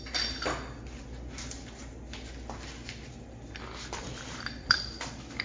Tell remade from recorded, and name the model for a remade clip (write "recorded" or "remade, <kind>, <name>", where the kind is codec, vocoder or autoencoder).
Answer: recorded